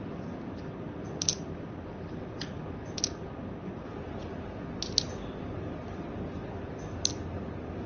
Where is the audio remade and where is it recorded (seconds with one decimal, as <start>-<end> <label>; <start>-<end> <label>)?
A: 0.0-7.9 recorded